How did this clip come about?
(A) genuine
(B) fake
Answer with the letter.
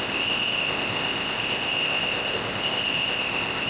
B